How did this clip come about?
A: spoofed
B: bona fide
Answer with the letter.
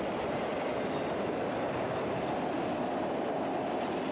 B